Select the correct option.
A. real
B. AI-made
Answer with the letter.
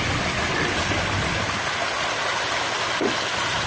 A